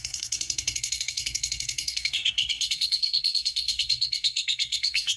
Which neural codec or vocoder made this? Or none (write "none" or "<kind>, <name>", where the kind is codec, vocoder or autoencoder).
codec, SNAC